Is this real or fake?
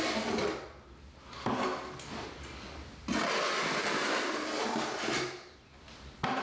real